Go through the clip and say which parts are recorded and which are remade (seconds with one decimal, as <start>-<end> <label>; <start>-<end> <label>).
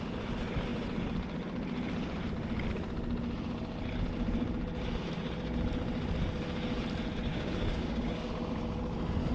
0.0-7.3 recorded; 7.3-8.3 remade; 8.3-9.3 recorded